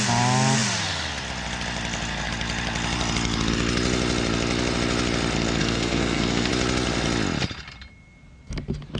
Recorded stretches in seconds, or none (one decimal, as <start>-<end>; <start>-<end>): 0.0-5.6; 6.5-9.0